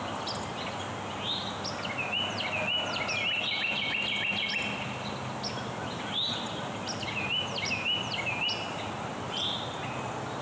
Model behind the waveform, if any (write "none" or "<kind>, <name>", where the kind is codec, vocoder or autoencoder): none